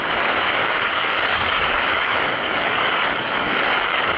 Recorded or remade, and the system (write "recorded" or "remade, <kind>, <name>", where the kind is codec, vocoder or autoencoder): remade, codec, DAC